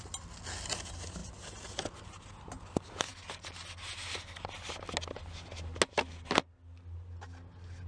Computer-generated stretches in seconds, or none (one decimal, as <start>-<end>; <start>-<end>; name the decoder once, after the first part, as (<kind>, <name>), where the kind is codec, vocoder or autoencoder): none

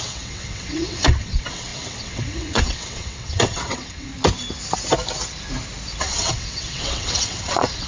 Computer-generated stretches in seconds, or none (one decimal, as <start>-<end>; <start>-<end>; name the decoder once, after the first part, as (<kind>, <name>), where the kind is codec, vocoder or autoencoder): 0.0-4.1 (vocoder, WaveNeXt); 6.0-7.9

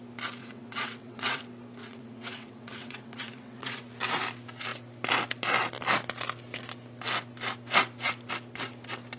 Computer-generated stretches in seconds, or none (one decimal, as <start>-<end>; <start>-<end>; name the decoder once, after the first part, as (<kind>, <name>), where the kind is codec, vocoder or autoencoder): 0.4-1.4 (vocoder, WaveNeXt); 1.8-3.8

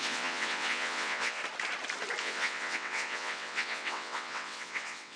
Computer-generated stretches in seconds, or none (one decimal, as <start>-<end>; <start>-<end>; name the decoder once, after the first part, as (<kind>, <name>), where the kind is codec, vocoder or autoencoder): 0.0-1.4 (vocoder, WaveNeXt); 2.2-5.2

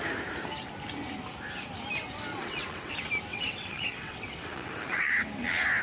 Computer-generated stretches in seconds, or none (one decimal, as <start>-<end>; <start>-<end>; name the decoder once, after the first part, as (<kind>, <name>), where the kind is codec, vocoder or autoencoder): 2.3-2.9 (vocoder, WaveNeXt); 3.3-5.1

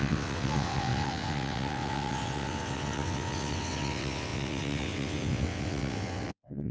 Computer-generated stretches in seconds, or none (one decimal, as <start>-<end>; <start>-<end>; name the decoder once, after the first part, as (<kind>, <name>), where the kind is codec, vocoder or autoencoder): 0.0-6.7 (vocoder, WaveNeXt)

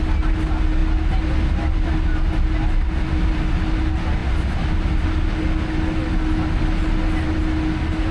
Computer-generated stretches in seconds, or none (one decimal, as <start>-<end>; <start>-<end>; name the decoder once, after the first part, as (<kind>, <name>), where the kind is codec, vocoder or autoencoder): none